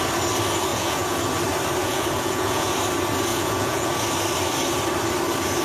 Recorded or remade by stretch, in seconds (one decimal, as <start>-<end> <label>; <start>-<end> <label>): 0.0-0.7 recorded; 0.7-1.2 remade; 1.2-1.8 recorded; 1.8-2.7 remade; 2.7-3.3 recorded; 3.3-3.9 remade; 3.9-5.6 recorded